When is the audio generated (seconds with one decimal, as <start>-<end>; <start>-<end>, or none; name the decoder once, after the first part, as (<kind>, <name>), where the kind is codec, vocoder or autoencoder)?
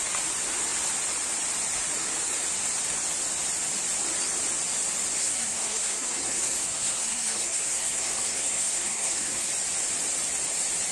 5.2-9.5 (codec, SNAC)